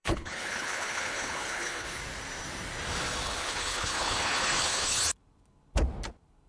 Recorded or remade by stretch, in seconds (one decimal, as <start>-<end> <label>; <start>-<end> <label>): 0.0-2.0 remade; 2.0-3.2 recorded; 3.2-5.0 remade; 5.0-6.5 recorded